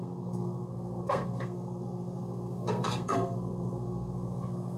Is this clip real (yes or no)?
no